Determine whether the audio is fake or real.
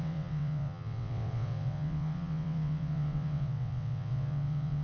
fake